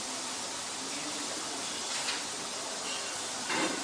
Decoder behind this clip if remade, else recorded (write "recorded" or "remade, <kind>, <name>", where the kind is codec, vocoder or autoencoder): recorded